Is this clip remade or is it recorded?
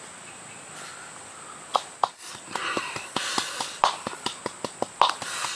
remade